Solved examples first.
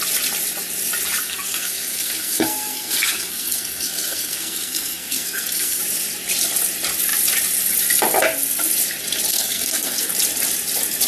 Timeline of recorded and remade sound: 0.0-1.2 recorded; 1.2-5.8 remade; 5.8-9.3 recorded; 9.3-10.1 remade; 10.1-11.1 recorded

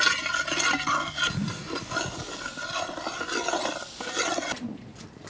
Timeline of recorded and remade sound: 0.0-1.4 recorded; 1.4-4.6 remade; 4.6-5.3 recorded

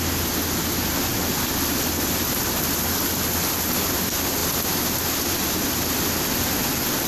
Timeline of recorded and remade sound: 0.0-1.1 recorded; 1.1-4.0 remade; 4.0-4.4 recorded; 4.4-7.1 remade

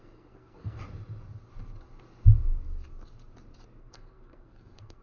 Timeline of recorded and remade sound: 0.0-0.8 remade; 0.8-3.8 recorded; 3.8-5.0 remade

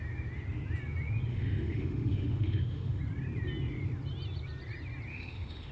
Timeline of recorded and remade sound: 0.0-1.3 recorded; 1.3-3.0 remade; 3.0-5.1 recorded; 5.1-5.7 remade

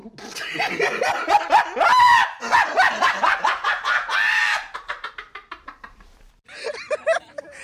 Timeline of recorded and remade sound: 0.0-1.4 recorded; 1.4-7.6 remade